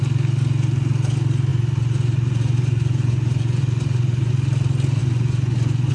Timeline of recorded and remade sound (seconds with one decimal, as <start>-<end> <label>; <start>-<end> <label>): 0.0-1.5 recorded; 1.5-4.3 remade; 4.3-5.0 recorded; 5.0-5.9 remade